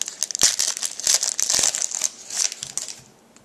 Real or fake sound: real